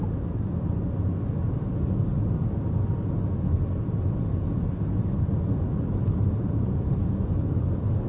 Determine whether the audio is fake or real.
real